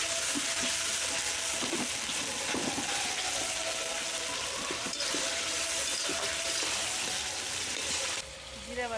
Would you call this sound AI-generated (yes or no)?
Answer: no